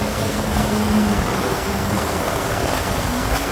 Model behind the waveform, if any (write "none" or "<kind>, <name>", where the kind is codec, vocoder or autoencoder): codec, SNAC